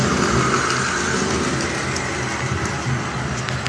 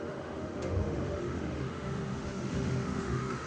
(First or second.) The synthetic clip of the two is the second